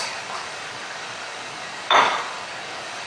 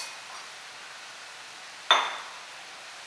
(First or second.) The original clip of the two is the second